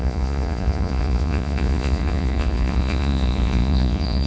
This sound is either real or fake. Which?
fake